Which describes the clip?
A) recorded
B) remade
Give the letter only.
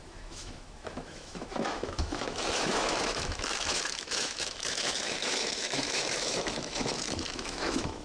B